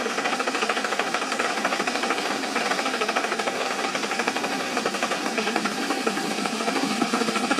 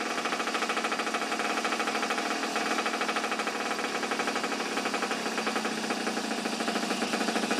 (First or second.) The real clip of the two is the second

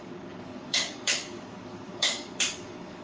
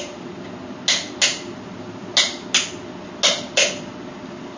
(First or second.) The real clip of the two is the second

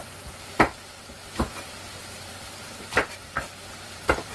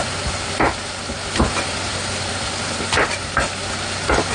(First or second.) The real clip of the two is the second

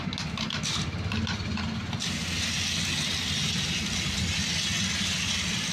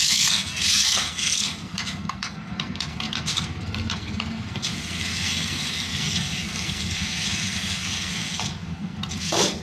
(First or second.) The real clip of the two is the first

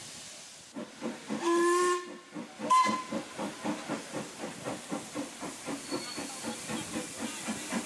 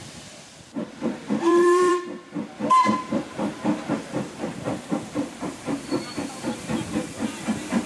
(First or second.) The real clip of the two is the first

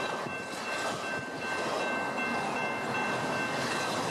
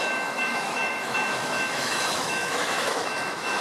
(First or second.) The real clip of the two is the first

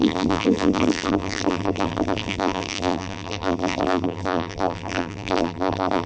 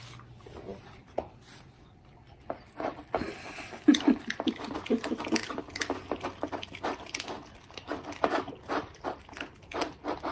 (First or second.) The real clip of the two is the second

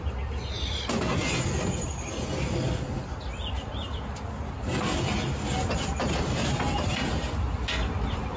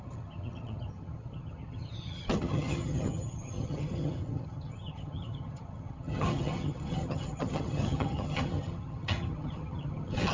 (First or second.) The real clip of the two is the first